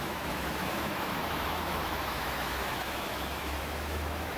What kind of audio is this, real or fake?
fake